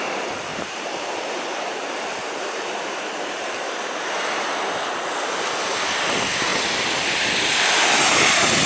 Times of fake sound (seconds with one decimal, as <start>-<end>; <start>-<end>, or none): 0.5-4.1